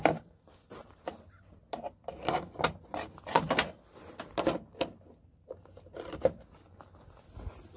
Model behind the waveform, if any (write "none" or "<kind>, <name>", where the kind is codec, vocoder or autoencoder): none